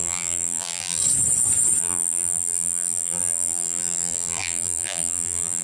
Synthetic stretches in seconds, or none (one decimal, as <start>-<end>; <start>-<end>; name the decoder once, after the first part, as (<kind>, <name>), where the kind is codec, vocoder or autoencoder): 0.0-1.0 (vocoder, BigVGAN v2); 1.8-5.6